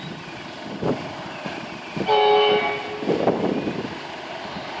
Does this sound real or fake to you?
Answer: real